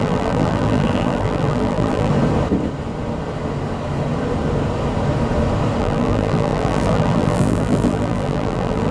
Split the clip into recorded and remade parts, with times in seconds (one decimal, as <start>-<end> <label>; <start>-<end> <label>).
0.0-2.1 remade; 2.1-5.8 recorded; 5.8-8.9 remade